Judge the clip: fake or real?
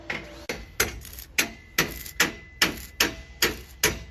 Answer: real